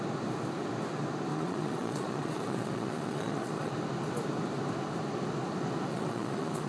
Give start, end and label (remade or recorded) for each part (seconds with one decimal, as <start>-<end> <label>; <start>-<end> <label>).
0.0-1.3 recorded; 1.3-3.7 remade; 3.7-5.9 recorded; 5.9-6.7 remade